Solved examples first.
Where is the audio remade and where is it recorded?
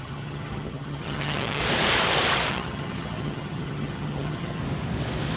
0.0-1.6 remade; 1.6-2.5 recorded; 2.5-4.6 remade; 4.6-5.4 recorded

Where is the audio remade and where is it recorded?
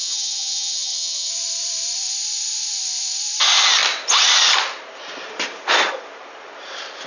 0.0-1.3 remade; 1.3-7.1 recorded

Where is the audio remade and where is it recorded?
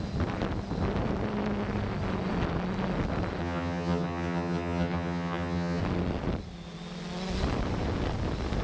0.0-3.4 recorded; 3.4-5.8 remade; 5.8-8.6 recorded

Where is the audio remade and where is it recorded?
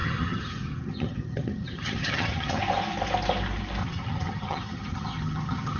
0.0-2.6 remade; 2.6-3.8 recorded; 3.8-5.8 remade